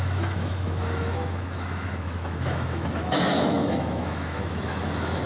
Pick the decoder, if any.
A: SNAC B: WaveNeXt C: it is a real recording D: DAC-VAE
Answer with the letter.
D